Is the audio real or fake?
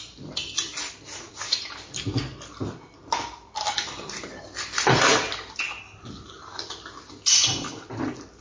real